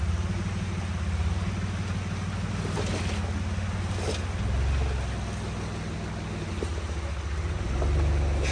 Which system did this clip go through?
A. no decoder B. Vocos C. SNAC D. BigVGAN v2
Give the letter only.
A